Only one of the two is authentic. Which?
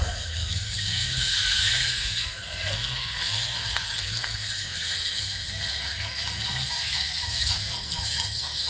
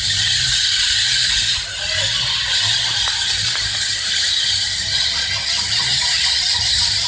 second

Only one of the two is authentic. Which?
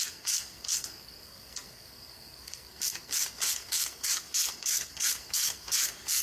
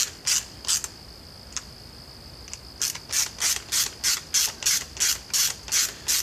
second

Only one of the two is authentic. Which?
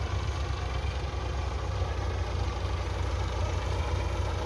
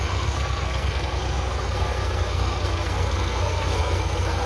first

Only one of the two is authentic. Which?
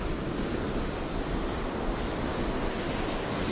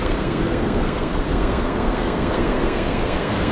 first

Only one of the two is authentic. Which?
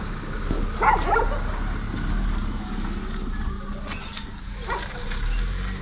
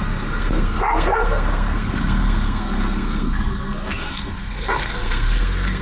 first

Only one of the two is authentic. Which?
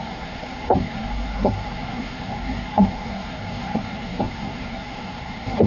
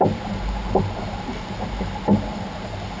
second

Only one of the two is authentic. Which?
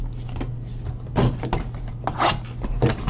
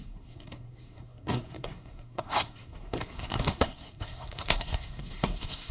first